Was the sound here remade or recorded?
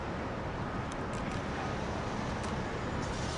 recorded